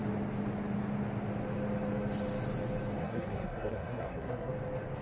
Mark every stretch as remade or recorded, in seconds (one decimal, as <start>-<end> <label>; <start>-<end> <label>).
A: 0.0-3.0 recorded; 3.0-4.5 remade; 4.5-5.0 recorded